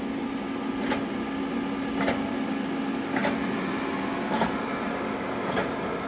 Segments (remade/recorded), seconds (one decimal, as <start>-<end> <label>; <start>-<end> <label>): 0.0-6.1 recorded